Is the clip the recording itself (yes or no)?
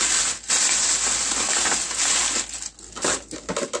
yes